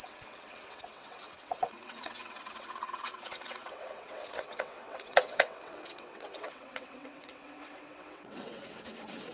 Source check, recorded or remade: remade